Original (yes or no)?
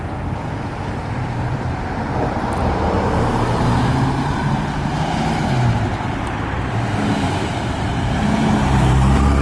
no